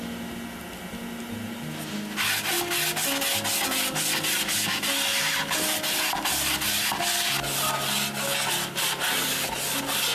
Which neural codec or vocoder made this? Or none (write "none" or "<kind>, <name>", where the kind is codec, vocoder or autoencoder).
none